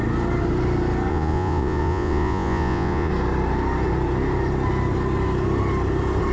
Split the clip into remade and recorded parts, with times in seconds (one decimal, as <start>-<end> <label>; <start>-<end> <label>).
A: 0.0-1.1 recorded; 1.1-3.1 remade; 3.1-6.3 recorded